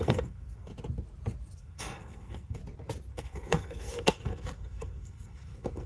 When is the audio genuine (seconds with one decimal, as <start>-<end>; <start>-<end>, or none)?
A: 0.7-1.6; 2.6-3.1